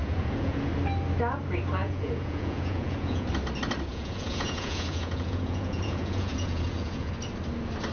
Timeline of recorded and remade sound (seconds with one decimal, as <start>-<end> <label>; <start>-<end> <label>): 0.0-0.7 remade; 0.7-1.8 recorded; 1.8-3.3 remade; 3.3-3.9 recorded; 3.9-7.1 remade; 7.1-7.9 recorded

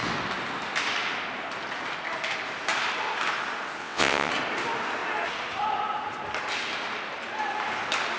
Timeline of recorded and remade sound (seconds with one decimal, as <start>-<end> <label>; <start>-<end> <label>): 0.0-3.8 recorded; 3.8-4.3 remade; 4.3-8.2 recorded

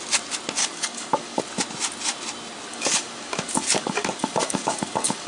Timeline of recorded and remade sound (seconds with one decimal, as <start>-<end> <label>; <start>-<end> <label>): 0.0-0.6 recorded; 0.6-1.4 remade; 1.4-2.7 recorded; 2.7-5.3 remade

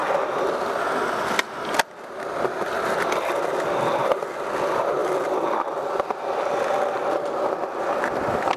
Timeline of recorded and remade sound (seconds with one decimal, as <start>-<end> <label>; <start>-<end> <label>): 0.0-5.0 recorded; 5.0-5.5 remade; 5.5-8.6 recorded

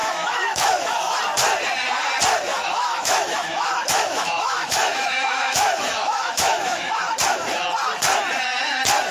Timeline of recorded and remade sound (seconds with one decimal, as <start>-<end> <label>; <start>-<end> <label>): 0.0-1.2 remade; 1.2-2.5 recorded; 2.5-7.0 remade; 7.0-9.1 recorded

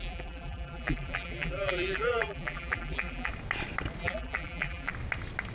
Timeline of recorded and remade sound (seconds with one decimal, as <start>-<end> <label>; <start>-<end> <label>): 0.0-3.3 remade; 3.3-4.0 recorded; 4.0-4.9 remade; 4.9-5.5 recorded

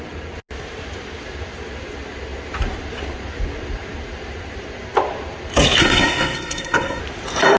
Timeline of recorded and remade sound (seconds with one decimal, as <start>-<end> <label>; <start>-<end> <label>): 0.0-5.8 recorded; 5.8-7.0 remade; 7.0-7.6 recorded

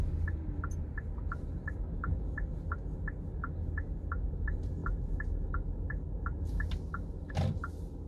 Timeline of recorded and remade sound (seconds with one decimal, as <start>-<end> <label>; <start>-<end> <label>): 0.0-8.1 recorded